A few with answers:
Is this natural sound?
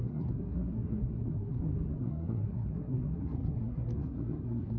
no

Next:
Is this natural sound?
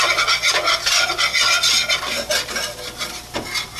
yes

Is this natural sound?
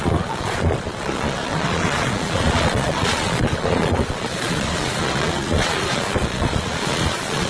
no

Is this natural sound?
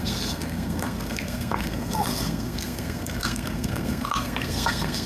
no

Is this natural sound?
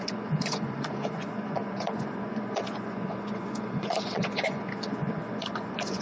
no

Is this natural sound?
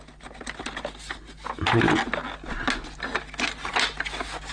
yes